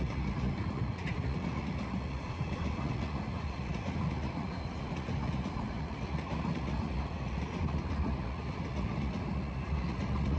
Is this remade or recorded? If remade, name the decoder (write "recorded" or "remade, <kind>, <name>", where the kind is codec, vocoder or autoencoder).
remade, vocoder, Vocos